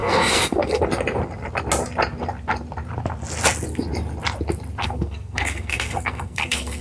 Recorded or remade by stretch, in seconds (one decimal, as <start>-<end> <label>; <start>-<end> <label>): 0.0-0.8 remade; 0.8-4.8 recorded; 4.8-6.8 remade